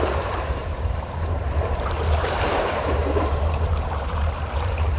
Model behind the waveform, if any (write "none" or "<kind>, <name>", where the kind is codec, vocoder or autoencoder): vocoder, BigVGAN v2